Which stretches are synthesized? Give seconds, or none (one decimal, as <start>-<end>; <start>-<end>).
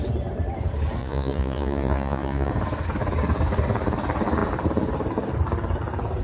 1.0-2.5